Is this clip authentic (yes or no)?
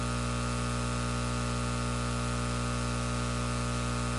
yes